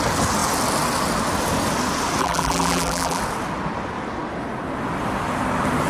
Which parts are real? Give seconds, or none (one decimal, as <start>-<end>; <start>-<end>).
0.0-2.2; 3.2-5.9